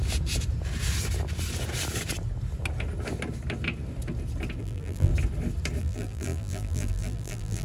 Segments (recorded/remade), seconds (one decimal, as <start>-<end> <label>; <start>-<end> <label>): 0.0-4.6 recorded; 4.6-5.1 remade; 5.1-5.8 recorded; 5.8-7.6 remade